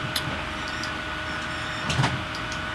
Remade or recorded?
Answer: recorded